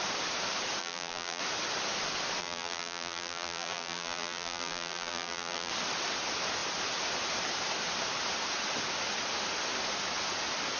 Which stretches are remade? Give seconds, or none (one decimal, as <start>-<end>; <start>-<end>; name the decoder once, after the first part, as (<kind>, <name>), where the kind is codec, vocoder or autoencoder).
0.8-1.4 (vocoder, BigVGAN v2); 2.4-5.7